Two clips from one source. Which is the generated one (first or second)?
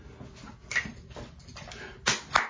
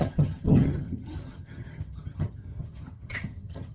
second